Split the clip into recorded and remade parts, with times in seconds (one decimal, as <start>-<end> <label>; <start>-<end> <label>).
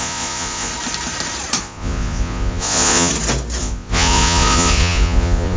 0.0-0.7 remade; 0.7-1.6 recorded; 1.6-3.1 remade; 3.1-3.6 recorded; 3.6-5.6 remade